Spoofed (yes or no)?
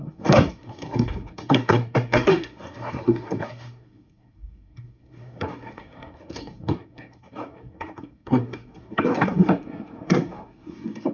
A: yes